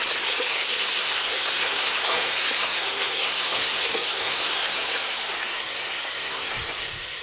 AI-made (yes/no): yes